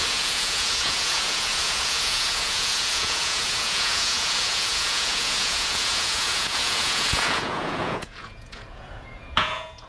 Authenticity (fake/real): fake